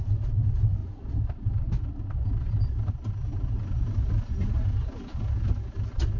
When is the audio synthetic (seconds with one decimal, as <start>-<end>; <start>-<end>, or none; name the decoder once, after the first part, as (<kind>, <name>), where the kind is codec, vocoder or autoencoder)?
none